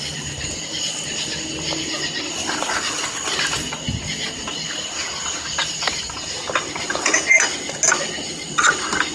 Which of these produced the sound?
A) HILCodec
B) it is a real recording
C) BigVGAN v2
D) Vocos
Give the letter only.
B